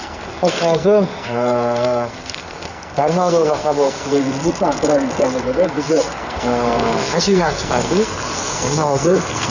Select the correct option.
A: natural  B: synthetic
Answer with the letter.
B